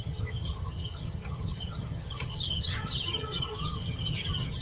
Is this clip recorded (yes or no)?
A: no